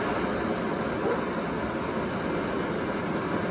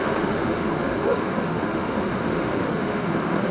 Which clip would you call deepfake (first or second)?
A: second